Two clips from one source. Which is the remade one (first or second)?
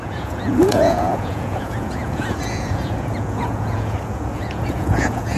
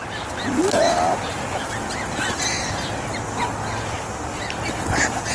first